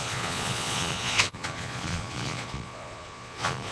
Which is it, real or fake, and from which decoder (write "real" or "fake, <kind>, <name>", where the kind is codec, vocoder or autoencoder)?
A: fake, vocoder, Vocos